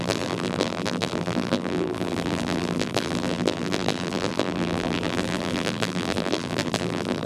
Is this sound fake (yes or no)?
yes